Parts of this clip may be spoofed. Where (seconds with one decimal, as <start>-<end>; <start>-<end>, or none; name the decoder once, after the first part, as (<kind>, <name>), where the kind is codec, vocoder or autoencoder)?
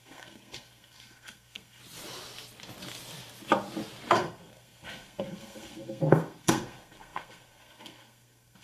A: 0.0-1.8 (codec, SNAC); 4.1-8.6